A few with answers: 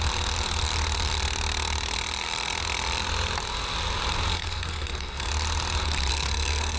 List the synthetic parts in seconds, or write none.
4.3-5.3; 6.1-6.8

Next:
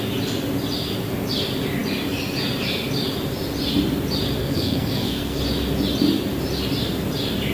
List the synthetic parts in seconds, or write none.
4.4-5.4

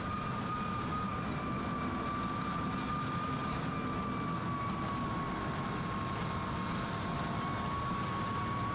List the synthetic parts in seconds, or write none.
none

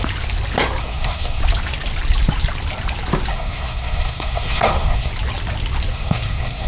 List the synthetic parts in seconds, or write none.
0.8-1.4; 3.3-5.1; 5.9-6.7

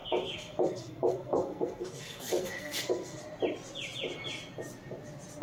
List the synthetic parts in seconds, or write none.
0.0-3.2